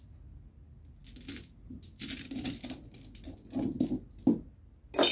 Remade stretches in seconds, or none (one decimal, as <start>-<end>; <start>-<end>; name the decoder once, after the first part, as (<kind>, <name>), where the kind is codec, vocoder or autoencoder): none